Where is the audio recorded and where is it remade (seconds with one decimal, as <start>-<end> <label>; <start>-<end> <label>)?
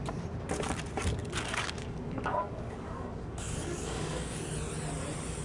0.0-1.2 recorded; 1.2-4.4 remade; 4.4-5.4 recorded